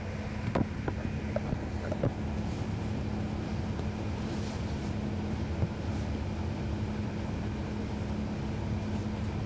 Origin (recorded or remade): recorded